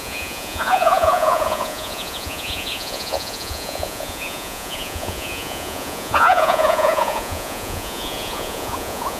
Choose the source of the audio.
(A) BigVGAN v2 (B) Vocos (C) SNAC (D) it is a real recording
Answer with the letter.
B